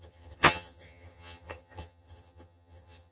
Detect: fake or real fake